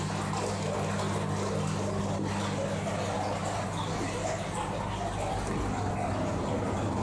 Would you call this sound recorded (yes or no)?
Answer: yes